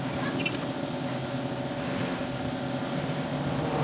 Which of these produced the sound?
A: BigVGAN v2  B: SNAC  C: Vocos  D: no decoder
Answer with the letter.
D